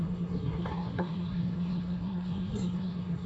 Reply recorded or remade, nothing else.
remade